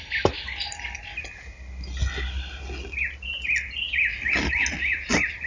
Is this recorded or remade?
recorded